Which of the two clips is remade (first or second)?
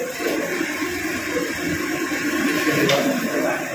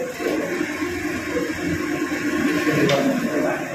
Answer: first